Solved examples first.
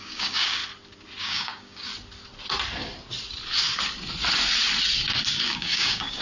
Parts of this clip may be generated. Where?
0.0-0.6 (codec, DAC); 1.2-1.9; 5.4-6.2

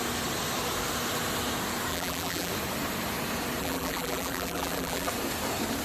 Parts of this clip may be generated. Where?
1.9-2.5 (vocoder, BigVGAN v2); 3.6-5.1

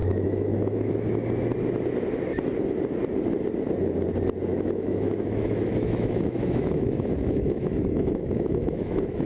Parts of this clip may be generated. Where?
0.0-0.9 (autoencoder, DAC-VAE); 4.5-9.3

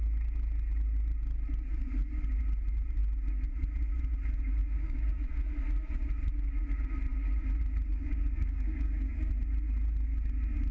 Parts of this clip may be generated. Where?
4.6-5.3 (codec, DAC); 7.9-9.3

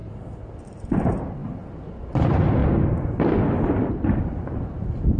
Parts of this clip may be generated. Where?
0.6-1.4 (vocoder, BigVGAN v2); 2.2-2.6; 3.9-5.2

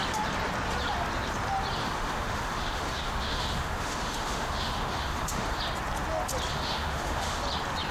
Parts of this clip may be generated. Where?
1.8-5.6 (autoencoder, DAC-VAE); 6.5-7.4

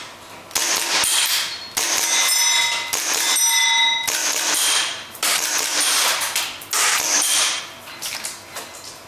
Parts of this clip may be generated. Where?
4.2-6.4 (vocoder, BigVGAN v2); 6.9-7.6

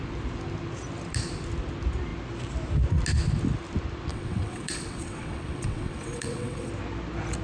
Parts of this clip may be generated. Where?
4.1-6.7 (vocoder, WaveNeXt)